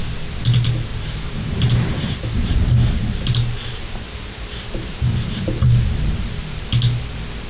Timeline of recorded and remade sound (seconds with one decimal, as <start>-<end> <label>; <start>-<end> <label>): 0.0-0.9 recorded; 0.9-5.4 remade; 5.4-7.5 recorded